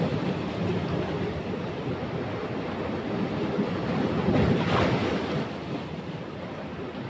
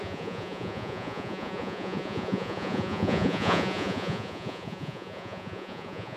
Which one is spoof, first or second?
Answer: second